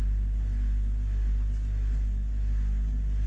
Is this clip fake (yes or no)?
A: no